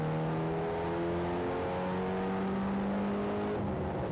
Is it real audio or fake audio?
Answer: real